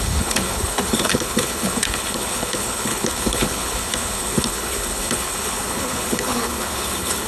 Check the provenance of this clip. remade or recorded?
remade